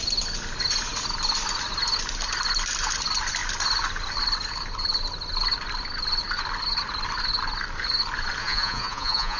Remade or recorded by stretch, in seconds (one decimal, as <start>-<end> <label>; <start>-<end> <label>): 0.0-8.4 recorded; 8.4-9.4 remade

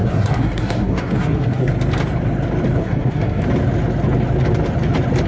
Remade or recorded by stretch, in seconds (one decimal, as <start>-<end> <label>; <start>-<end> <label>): 0.0-1.7 remade; 1.7-2.8 recorded; 2.8-3.4 remade; 3.4-5.3 recorded

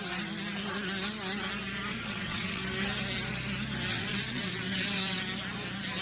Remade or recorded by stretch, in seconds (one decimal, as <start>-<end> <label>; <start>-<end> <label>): 0.0-1.9 recorded; 1.9-2.6 remade; 2.6-3.9 recorded; 3.9-5.2 remade; 5.2-6.0 recorded